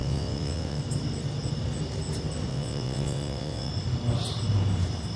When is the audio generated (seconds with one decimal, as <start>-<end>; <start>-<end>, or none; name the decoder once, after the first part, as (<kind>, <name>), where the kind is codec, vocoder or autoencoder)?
0.0-0.8 (vocoder, WaveNeXt); 2.5-3.7